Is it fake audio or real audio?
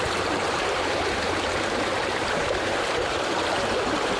fake